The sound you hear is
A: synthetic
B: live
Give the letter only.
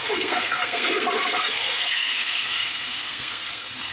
A